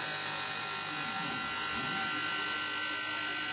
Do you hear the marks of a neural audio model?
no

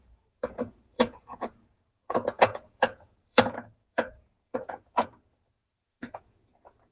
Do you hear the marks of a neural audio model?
yes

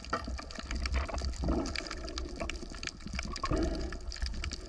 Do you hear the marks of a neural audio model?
no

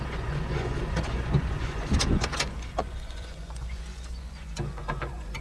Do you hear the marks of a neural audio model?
yes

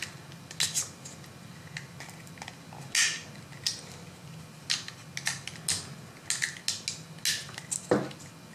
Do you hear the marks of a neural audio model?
no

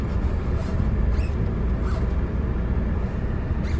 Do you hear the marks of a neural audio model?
no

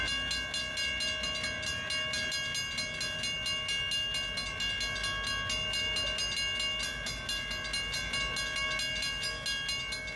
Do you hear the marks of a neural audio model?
no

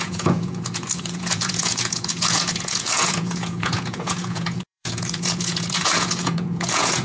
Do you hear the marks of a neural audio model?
yes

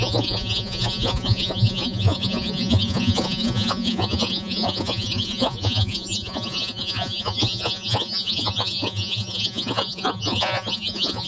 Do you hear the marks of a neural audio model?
yes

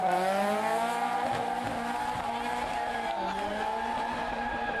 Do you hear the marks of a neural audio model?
no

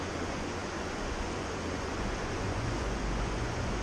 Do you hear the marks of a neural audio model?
yes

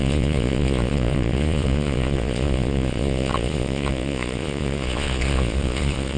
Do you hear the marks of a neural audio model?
yes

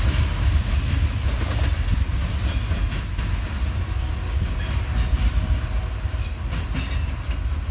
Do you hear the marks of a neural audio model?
no